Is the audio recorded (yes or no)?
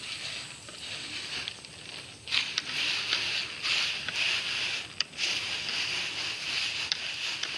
yes